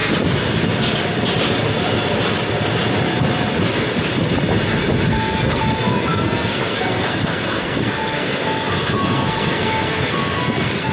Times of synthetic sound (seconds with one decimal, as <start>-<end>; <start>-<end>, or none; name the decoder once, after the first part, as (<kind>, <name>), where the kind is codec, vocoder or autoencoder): 5.1-10.9 (codec, SNAC)